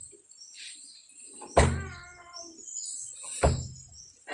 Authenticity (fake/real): real